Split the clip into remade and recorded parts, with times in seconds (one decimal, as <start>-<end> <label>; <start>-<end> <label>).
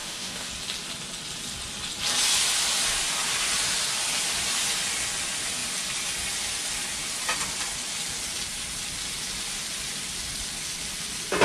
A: 0.0-0.5 remade; 0.5-11.4 recorded